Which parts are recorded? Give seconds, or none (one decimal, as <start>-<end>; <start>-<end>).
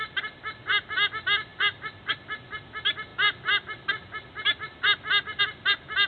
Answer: 0.0-6.1